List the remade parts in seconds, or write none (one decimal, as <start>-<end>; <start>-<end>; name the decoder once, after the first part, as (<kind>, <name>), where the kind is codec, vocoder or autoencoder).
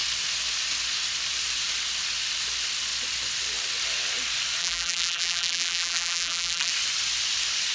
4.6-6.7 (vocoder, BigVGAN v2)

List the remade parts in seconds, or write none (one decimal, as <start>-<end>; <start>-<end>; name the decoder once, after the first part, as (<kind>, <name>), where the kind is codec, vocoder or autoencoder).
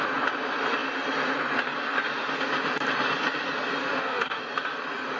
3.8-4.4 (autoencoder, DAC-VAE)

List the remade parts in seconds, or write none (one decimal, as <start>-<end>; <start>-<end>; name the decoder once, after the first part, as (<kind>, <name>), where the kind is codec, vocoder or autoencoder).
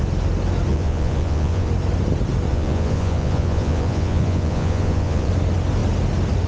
0.7-1.7 (vocoder, Vocos); 2.5-5.3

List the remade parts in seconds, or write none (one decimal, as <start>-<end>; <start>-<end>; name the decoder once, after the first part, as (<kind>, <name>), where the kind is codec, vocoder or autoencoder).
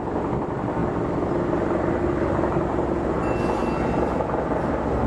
none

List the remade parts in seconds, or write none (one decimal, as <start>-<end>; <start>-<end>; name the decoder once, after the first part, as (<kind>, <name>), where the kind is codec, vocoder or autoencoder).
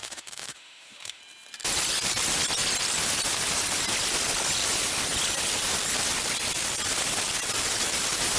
0.0-1.2 (autoencoder, DAC-VAE)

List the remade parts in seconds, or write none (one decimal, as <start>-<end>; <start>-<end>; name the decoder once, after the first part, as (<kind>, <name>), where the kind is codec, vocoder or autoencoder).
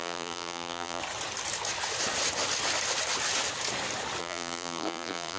0.0-1.0 (vocoder, BigVGAN v2); 4.2-5.4